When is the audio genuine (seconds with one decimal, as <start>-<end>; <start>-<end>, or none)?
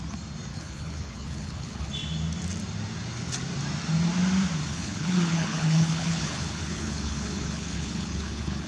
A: 0.0-0.5; 1.9-4.7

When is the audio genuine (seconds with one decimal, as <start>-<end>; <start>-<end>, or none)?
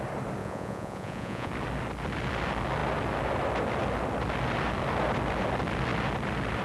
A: 0.0-0.4; 1.5-6.6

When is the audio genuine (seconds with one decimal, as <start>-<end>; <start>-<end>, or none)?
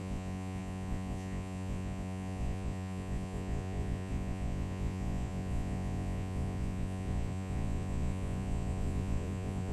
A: none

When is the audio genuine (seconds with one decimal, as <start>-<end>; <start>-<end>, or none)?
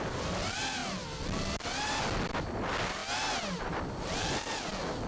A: 0.0-5.1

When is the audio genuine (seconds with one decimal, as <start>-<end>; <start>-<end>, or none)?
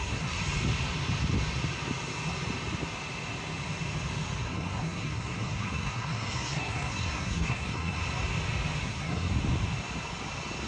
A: 0.4-4.4; 8.0-8.8; 9.3-10.7